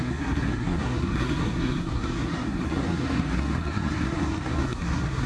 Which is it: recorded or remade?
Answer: remade